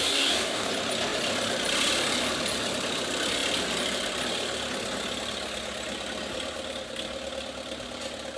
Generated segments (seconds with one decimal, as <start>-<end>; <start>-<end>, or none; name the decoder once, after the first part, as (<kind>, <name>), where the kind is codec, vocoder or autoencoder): 0.0-0.7 (codec, DAC)